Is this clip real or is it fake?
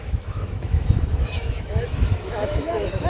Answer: fake